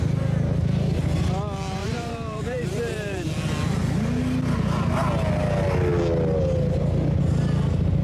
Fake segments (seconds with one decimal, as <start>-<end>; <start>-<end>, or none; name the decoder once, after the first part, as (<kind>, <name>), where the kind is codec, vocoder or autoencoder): 1.8-3.3 (vocoder, BigVGAN v2)